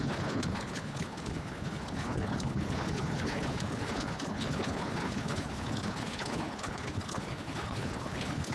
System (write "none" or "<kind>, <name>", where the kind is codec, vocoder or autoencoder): codec, HILCodec